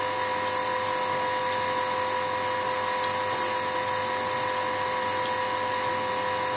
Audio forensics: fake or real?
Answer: real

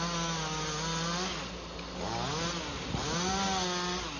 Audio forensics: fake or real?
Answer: real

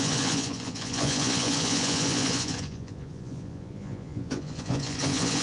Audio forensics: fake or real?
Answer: fake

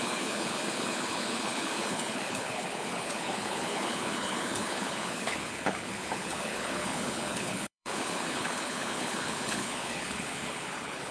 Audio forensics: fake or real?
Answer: fake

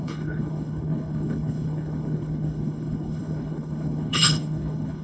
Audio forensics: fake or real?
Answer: fake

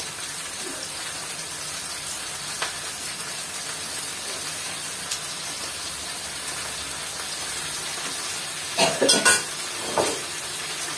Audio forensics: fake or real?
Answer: real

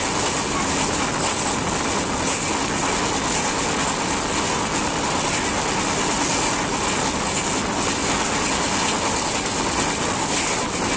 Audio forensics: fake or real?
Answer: real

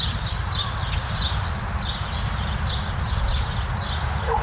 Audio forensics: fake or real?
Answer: real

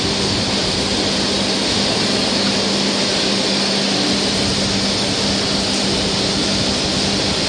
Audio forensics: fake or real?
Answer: real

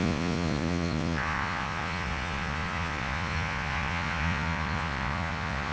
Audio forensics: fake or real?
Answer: fake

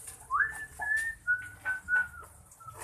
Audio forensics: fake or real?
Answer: real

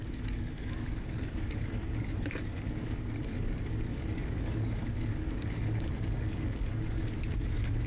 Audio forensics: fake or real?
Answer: fake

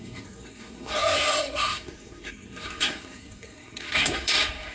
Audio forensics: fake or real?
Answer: fake